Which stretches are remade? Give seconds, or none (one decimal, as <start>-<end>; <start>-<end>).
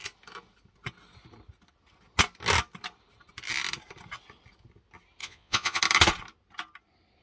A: 5.2-5.8